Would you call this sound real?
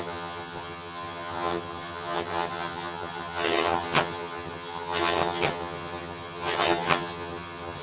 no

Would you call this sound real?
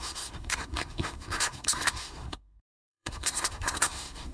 no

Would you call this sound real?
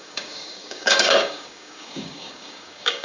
no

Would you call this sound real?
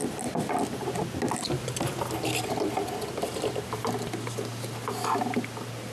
yes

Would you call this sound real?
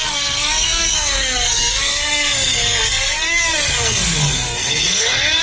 no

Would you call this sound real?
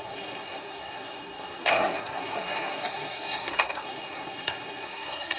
no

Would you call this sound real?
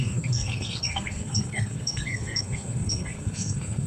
no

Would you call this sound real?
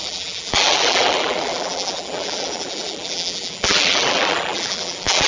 no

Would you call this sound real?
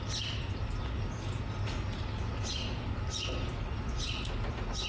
yes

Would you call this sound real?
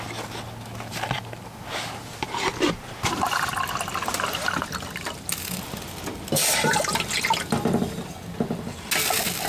yes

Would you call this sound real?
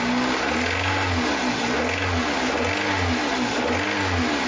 yes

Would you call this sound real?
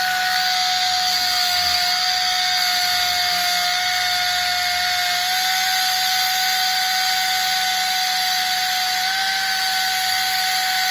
yes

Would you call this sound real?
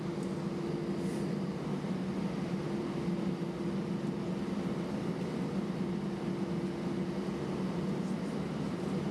yes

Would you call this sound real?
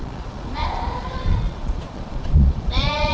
no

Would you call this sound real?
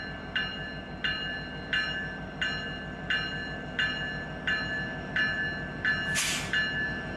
yes